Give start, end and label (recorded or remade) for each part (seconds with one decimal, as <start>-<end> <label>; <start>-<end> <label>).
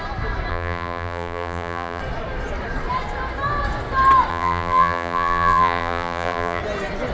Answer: 0.0-0.5 recorded; 0.5-2.0 remade; 2.0-4.3 recorded; 4.3-6.6 remade; 6.6-7.1 recorded